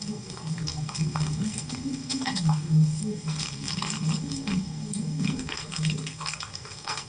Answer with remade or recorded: remade